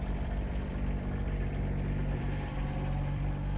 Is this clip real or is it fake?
fake